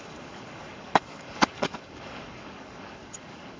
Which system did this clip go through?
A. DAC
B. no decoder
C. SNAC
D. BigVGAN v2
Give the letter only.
A